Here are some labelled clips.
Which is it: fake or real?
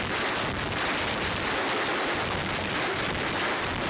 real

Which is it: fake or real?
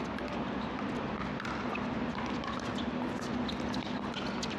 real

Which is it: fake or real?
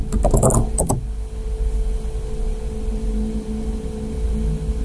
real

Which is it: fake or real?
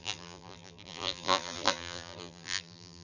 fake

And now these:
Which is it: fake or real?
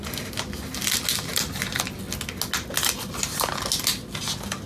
real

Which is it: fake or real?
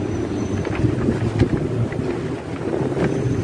real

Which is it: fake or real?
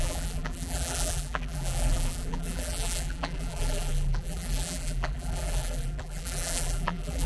fake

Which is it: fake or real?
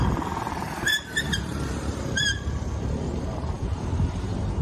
fake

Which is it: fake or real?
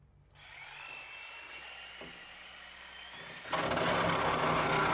real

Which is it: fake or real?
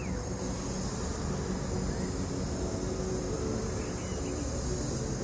real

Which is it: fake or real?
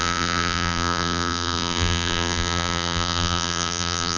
fake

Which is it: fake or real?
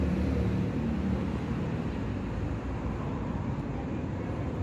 fake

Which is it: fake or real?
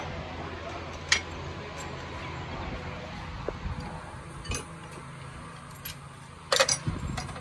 real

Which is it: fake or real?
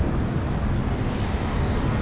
real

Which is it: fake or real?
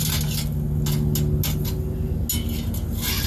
real